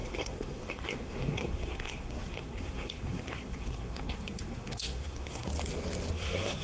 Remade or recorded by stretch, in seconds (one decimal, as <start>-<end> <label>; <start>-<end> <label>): 0.0-5.5 remade; 5.5-6.1 recorded; 6.1-6.6 remade